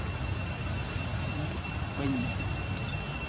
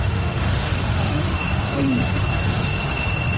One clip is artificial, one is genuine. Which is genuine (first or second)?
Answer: first